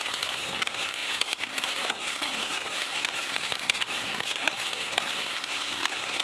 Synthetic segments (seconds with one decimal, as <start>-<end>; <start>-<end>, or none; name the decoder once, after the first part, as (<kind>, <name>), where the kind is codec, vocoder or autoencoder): 0.0-6.2 (codec, SNAC)